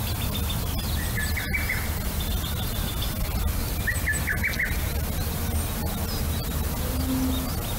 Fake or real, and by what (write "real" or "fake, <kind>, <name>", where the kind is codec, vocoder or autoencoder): real